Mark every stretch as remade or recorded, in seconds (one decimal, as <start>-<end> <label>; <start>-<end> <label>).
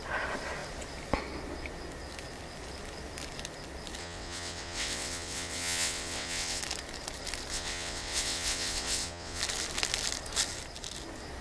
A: 0.0-4.0 recorded; 4.0-6.6 remade; 6.6-7.5 recorded; 7.5-9.4 remade; 9.4-11.4 recorded